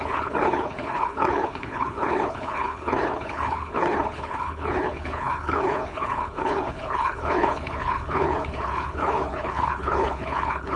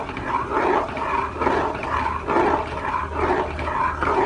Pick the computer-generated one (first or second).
first